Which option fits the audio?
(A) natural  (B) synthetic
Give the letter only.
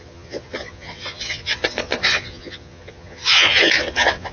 B